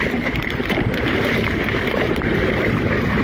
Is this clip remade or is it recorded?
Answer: remade